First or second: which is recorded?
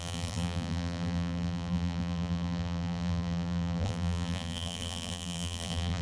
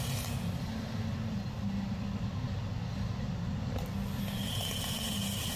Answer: second